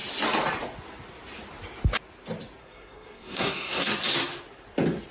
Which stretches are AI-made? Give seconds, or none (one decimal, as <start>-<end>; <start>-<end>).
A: 2.6-3.9